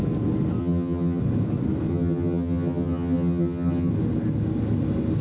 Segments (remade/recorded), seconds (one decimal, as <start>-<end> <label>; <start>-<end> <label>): 0.0-0.6 recorded; 0.6-1.2 remade; 1.2-1.9 recorded; 1.9-3.9 remade; 3.9-5.2 recorded